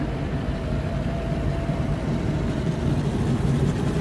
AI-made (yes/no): yes